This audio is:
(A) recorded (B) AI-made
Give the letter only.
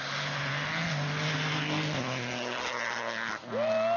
A